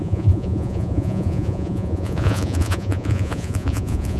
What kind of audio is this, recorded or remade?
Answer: remade